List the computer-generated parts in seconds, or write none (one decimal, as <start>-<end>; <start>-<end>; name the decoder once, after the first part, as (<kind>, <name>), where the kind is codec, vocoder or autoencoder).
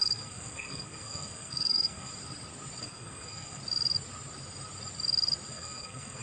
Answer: 0.0-2.1 (codec, SNAC); 2.8-3.6; 5.5-6.2